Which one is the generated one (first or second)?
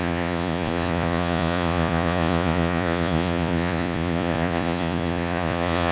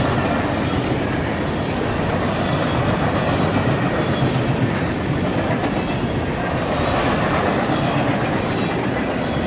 first